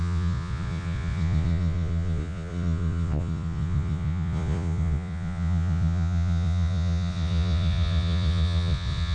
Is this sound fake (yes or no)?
yes